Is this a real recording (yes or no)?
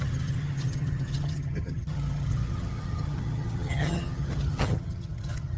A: no